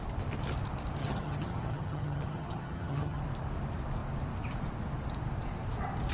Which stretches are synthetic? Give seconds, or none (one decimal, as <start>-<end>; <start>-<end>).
1.0-3.2